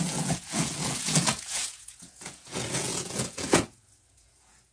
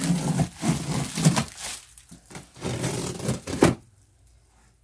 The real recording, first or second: second